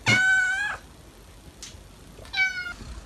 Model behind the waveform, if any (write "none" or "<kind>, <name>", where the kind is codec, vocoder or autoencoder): none